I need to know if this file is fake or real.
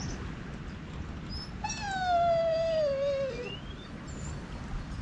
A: real